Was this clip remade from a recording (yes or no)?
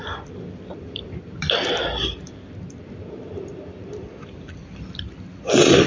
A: yes